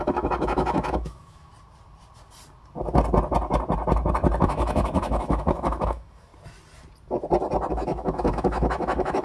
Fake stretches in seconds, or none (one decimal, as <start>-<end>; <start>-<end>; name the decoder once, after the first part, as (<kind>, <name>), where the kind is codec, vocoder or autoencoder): 0.0-1.5 (autoencoder, DAC-VAE); 4.4-6.3; 7.7-9.2